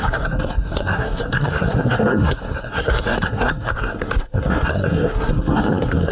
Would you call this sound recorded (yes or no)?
no